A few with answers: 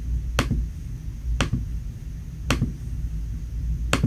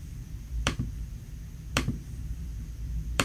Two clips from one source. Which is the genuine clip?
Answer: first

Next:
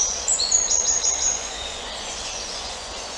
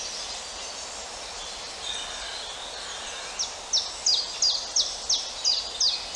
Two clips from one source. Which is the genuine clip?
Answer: second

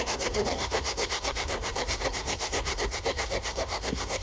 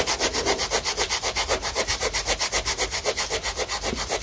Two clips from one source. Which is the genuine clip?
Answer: second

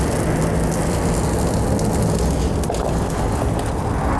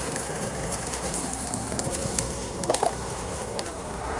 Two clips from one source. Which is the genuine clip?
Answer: first